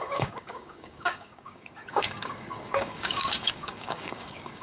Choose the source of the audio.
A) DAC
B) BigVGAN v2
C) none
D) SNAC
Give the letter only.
A